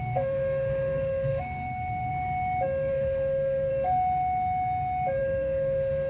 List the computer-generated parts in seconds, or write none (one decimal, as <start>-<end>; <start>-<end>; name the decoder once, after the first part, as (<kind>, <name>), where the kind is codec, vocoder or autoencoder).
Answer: 0.0-2.1 (codec, SNAC); 2.9-3.7; 5.2-6.1